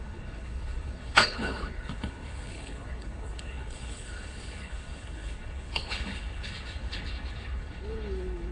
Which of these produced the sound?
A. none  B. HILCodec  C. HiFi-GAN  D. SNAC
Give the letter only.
B